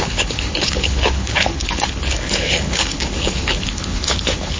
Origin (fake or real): fake